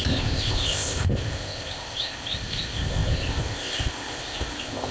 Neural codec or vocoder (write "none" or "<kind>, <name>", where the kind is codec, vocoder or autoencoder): codec, ZipCodec